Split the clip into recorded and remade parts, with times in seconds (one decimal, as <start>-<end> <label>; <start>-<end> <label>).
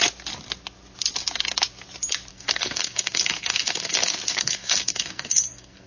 0.0-2.3 recorded; 2.3-5.9 remade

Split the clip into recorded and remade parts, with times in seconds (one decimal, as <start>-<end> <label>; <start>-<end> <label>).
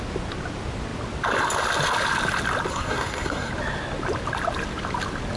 0.0-2.7 recorded; 2.7-3.5 remade; 3.5-5.4 recorded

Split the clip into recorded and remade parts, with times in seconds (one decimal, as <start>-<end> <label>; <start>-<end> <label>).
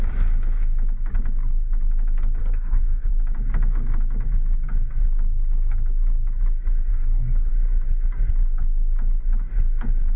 0.0-2.4 recorded; 2.4-3.1 remade; 3.1-6.9 recorded; 6.9-7.5 remade; 7.5-10.2 recorded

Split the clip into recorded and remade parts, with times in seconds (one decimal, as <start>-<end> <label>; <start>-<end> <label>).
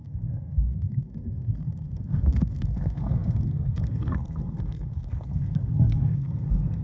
0.0-6.8 remade